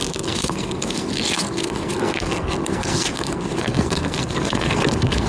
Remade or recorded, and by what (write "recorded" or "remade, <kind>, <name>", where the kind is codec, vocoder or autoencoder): remade, codec, SNAC